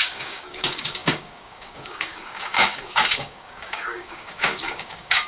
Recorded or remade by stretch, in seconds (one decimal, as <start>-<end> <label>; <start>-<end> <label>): 0.0-5.3 remade